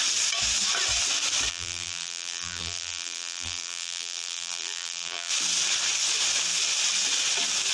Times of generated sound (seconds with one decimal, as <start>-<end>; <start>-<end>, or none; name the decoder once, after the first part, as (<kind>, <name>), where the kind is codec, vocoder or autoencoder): 1.5-5.3 (vocoder, BigVGAN v2)